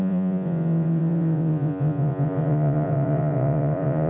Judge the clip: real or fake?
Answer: fake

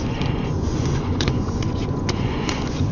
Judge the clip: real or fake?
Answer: fake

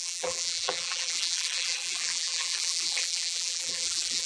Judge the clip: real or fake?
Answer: fake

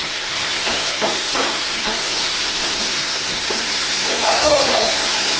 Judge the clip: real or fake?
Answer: fake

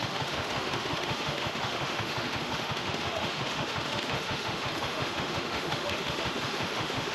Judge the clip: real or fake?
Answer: fake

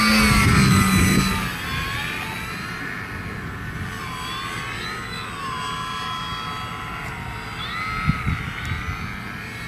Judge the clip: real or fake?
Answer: real